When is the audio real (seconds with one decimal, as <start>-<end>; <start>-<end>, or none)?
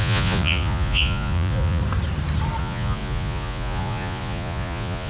1.8-2.6